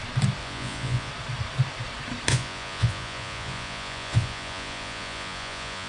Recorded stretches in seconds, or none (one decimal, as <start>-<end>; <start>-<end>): 0.0-0.4; 1.1-2.3